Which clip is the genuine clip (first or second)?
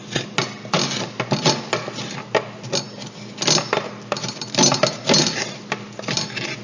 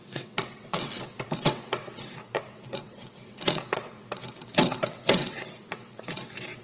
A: first